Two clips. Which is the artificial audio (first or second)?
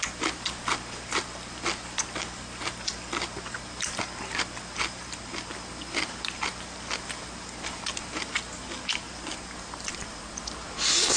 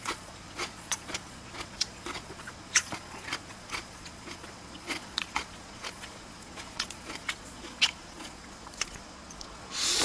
second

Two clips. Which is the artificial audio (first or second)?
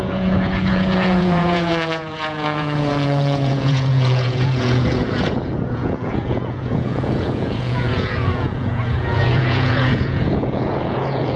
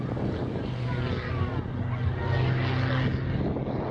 first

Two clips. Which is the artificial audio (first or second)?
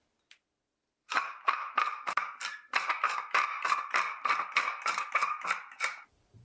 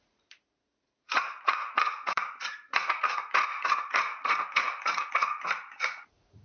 second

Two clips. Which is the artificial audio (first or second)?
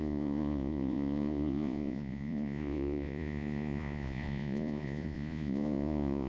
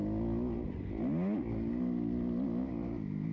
first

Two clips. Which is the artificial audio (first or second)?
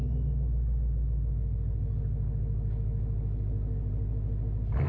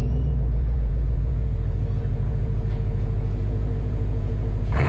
second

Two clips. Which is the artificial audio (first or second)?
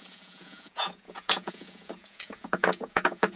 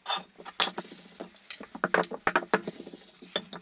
first